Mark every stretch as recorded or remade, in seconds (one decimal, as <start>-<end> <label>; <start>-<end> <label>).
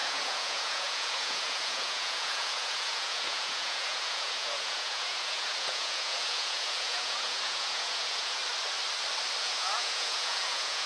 0.0-8.4 remade; 8.4-9.4 recorded; 9.4-10.9 remade